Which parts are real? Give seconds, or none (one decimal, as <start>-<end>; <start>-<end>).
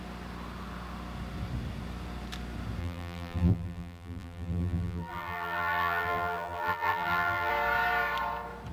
0.0-2.8; 7.5-8.7